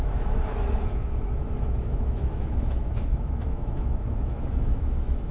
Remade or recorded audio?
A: remade